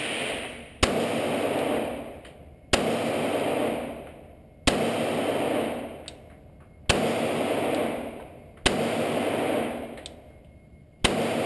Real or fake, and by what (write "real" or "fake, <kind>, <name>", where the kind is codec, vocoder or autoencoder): real